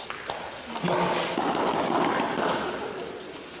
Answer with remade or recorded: recorded